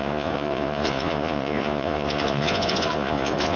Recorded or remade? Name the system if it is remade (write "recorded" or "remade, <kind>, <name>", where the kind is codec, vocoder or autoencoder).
remade, vocoder, Vocos